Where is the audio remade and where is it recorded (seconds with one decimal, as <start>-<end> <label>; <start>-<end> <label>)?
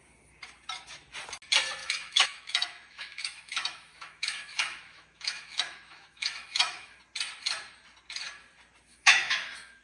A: 0.0-1.8 recorded; 1.8-7.0 remade; 7.0-8.9 recorded; 8.9-9.8 remade